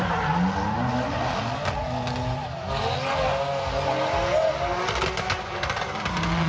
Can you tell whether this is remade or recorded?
recorded